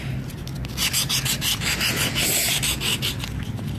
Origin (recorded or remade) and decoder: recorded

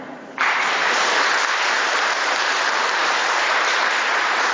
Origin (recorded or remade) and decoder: remade, vocoder, BigVGAN v2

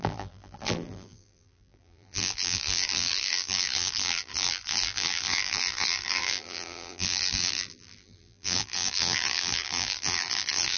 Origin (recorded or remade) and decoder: remade, vocoder, BigVGAN v2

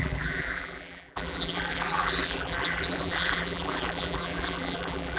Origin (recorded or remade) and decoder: remade, vocoder, BigVGAN v2